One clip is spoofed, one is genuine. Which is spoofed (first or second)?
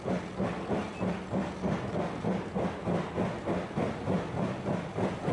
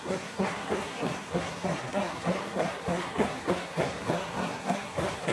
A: second